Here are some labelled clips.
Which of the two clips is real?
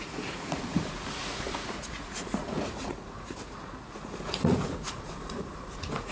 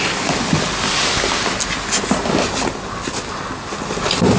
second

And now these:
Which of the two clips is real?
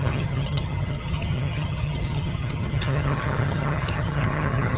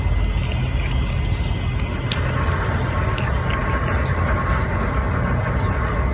second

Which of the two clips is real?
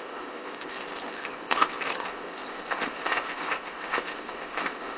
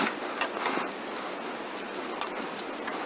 second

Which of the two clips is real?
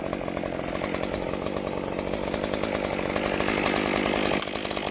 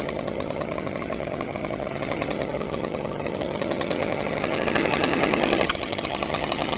first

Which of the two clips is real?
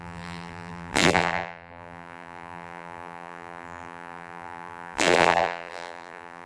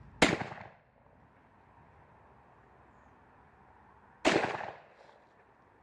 second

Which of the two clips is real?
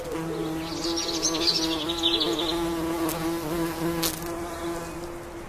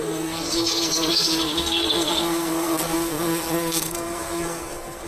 first